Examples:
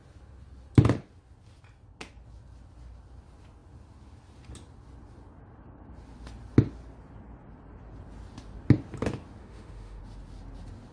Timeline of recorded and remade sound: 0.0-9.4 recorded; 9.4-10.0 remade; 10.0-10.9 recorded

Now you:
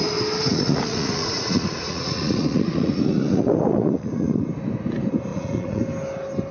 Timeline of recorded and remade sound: 0.0-0.5 recorded; 0.5-4.4 remade; 4.4-5.3 recorded; 5.3-5.8 remade; 5.8-6.5 recorded

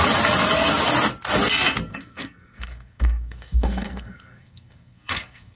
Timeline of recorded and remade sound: 0.0-1.9 recorded; 1.9-5.6 remade

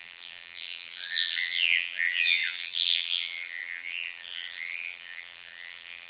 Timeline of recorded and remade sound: 0.0-6.1 remade

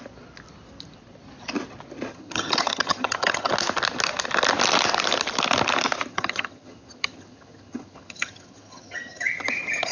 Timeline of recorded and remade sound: 0.0-2.1 recorded; 2.1-3.5 remade; 3.5-6.1 recorded; 6.1-9.9 remade